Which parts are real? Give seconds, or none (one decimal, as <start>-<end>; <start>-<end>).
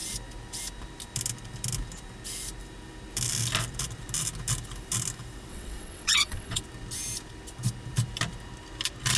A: 0.0-5.5; 6.6-9.2